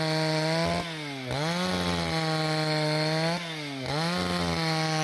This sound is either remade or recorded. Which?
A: recorded